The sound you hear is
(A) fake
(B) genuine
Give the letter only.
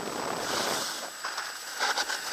B